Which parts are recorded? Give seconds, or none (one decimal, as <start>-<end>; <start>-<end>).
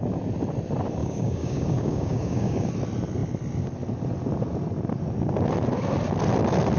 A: 0.0-1.0; 2.7-6.8